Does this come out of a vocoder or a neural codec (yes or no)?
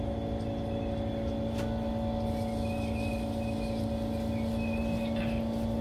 no